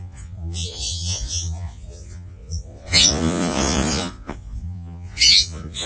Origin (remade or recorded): remade